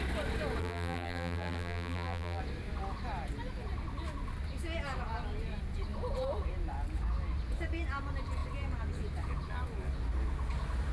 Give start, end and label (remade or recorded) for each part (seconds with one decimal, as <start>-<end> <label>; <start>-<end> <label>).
0.0-0.6 recorded; 0.6-2.4 remade; 2.4-10.9 recorded